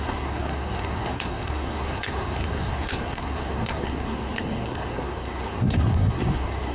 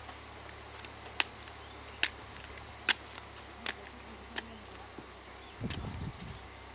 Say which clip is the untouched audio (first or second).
second